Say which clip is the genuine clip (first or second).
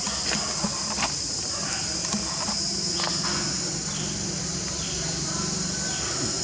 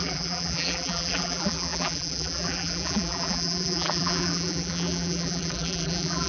first